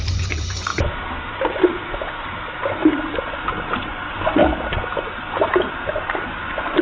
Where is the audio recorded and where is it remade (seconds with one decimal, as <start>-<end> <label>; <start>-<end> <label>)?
0.0-0.7 remade; 0.7-3.8 recorded; 3.8-4.4 remade; 4.4-5.9 recorded; 5.9-6.8 remade